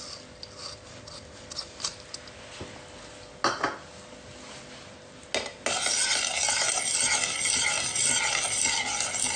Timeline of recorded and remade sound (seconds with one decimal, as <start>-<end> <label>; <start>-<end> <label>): 0.0-9.4 recorded